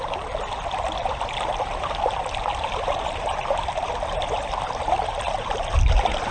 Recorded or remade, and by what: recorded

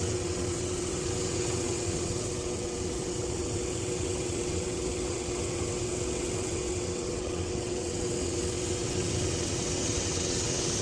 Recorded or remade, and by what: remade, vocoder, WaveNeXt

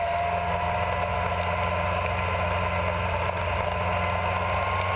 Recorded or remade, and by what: recorded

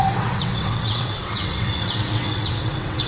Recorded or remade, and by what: remade, vocoder, WaveNeXt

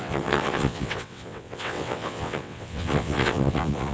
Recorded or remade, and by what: remade, vocoder, WaveNeXt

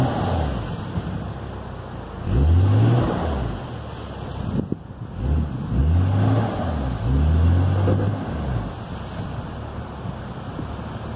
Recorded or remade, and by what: recorded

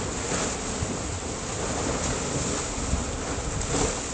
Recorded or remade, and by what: recorded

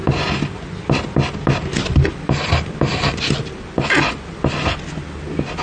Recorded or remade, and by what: recorded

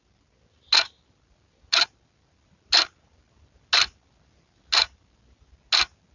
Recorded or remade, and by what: recorded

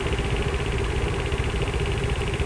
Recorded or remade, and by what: recorded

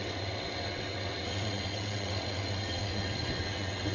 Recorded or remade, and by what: remade, vocoder, WaveNeXt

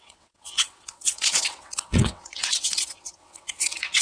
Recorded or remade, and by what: remade, vocoder, WaveNeXt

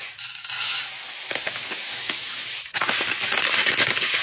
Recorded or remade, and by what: recorded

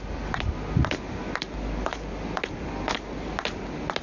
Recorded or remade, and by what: recorded